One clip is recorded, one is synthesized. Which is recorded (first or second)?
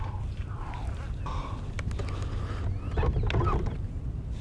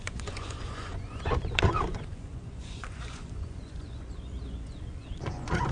first